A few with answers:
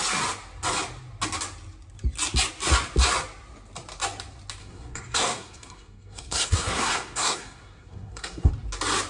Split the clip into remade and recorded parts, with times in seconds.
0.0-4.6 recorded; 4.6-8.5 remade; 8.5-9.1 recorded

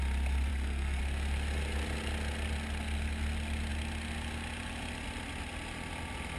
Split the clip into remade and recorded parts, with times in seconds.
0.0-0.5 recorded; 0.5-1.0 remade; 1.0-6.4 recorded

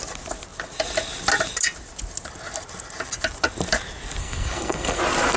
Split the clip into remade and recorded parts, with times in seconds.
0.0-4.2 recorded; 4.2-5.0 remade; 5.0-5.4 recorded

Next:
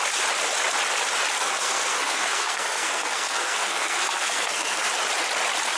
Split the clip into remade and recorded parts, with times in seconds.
0.0-1.4 recorded; 1.4-4.9 remade; 4.9-5.8 recorded

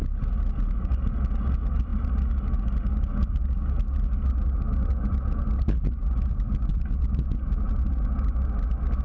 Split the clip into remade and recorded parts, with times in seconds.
0.0-9.0 recorded

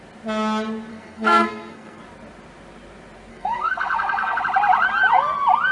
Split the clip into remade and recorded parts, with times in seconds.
0.0-0.9 recorded; 0.9-2.0 remade; 2.0-3.3 recorded; 3.3-4.4 remade; 4.4-5.7 recorded

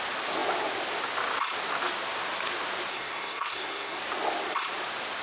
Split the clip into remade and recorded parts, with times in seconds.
0.0-2.9 recorded; 2.9-4.0 remade; 4.0-5.2 recorded

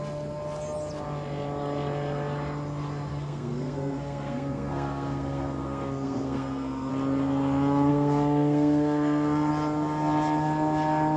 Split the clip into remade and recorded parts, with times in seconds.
0.0-3.1 recorded; 3.1-6.9 remade; 6.9-7.9 recorded; 7.9-9.5 remade; 9.5-11.2 recorded